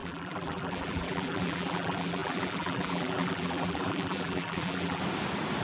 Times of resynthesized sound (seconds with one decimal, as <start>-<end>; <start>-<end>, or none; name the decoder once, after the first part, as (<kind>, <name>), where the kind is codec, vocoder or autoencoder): 0.0-5.0 (vocoder, BigVGAN v2)